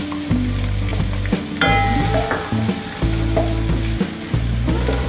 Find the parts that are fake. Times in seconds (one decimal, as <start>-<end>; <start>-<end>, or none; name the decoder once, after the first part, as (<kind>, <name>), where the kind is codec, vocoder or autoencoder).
none